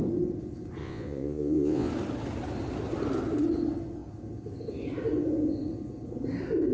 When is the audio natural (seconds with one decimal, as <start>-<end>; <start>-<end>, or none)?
0.0-0.8; 1.9-6.7